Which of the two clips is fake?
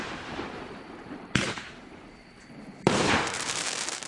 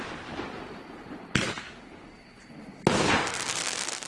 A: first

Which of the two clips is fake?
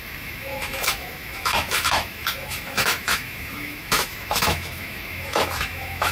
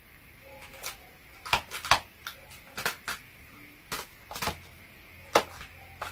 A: first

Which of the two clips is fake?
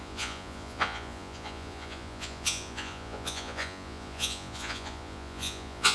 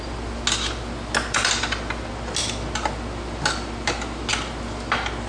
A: first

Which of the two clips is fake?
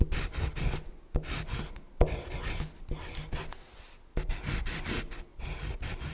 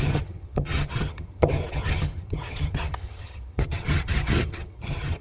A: second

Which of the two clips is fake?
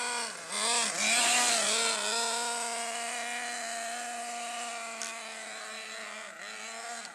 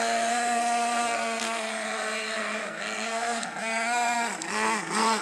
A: second